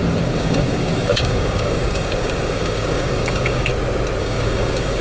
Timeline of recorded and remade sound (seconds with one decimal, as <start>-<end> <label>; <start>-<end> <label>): 0.0-3.7 remade; 3.7-4.2 recorded; 4.2-5.0 remade

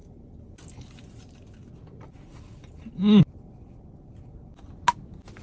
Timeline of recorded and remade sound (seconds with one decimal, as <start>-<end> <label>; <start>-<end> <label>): 0.0-5.4 recorded